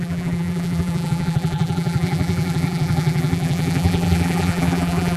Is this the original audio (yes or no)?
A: no